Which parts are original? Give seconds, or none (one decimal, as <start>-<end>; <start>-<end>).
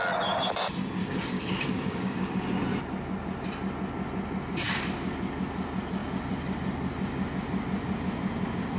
0.0-1.0; 2.3-8.8